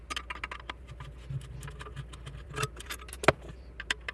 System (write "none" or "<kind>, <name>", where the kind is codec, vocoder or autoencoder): none